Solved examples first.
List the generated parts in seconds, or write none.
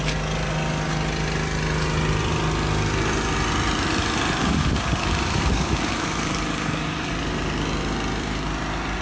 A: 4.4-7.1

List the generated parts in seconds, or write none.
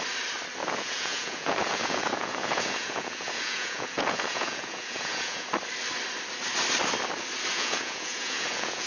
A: 0.6-5.5; 7.5-8.9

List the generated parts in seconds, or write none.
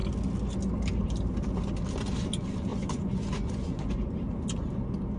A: 2.7-4.1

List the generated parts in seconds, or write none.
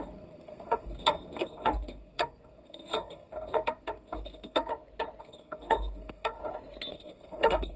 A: 0.0-4.7; 5.2-6.4; 6.9-7.8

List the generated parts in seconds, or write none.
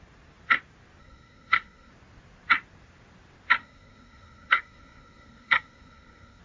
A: 1.0-1.9; 3.6-6.4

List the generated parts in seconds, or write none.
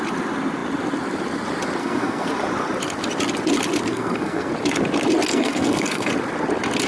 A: 1.8-2.3; 3.9-4.5; 5.3-6.1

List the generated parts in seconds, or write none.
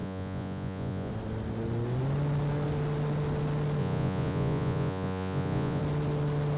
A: 0.0-1.1; 3.8-5.8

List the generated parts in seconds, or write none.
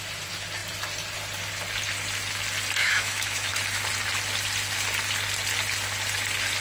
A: 2.8-3.5